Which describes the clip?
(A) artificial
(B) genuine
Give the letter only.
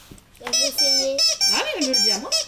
B